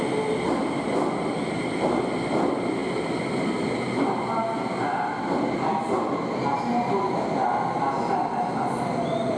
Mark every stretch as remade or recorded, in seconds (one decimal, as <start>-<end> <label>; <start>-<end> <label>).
0.0-9.4 recorded